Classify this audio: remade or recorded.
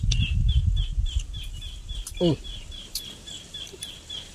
recorded